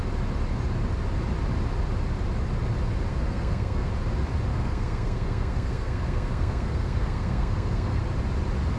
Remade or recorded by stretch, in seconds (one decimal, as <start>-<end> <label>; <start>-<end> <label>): 0.0-3.1 recorded; 3.1-3.9 remade; 3.9-4.5 recorded; 4.5-8.0 remade; 8.0-8.8 recorded